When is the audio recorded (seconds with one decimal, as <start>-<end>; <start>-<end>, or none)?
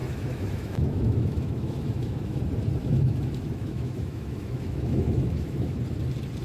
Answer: 2.4-2.8; 5.8-6.4